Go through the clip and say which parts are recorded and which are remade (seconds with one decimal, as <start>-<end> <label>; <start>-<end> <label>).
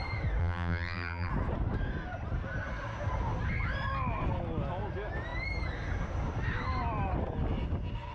0.0-0.4 recorded; 0.4-1.3 remade; 1.3-8.1 recorded